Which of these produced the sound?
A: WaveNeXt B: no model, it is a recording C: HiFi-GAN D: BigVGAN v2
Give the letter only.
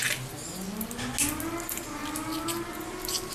B